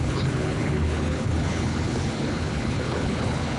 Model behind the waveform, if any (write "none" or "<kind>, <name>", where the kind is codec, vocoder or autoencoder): codec, HILCodec